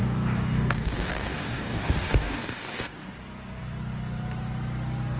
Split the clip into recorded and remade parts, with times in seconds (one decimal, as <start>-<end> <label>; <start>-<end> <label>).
0.0-3.1 remade; 3.1-5.2 recorded